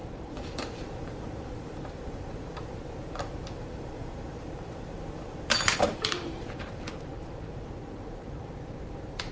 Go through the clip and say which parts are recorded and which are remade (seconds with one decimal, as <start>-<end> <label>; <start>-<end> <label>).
0.0-9.3 remade